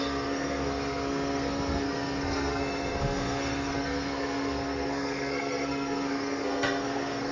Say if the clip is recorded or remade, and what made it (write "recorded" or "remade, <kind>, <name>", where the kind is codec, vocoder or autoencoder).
remade, codec, SNAC